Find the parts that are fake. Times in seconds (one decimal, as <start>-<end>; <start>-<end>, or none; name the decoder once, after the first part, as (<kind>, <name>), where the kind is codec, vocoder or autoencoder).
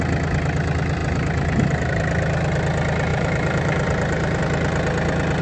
1.0-1.9 (vocoder, BigVGAN v2); 3.1-4.4